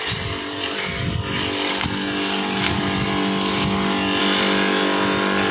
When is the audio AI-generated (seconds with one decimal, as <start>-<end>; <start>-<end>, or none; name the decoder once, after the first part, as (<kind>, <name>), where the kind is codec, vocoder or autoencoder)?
none